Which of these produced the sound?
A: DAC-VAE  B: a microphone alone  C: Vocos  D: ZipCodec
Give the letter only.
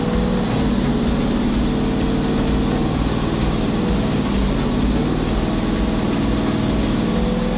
B